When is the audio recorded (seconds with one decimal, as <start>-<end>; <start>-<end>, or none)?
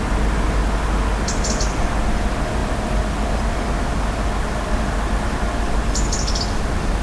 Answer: 0.0-7.0